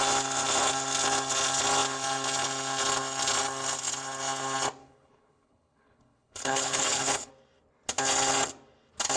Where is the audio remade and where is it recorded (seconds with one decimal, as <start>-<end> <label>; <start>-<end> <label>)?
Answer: 0.0-4.8 recorded; 4.8-7.3 remade; 7.3-9.2 recorded